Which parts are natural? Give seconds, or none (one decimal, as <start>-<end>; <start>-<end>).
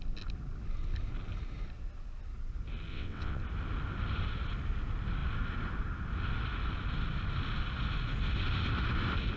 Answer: 0.0-2.9; 3.4-9.4